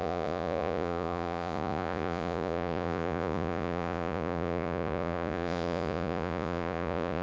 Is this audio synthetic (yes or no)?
yes